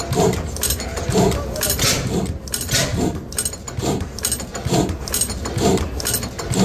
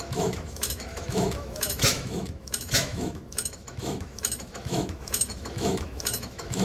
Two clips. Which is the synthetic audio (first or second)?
second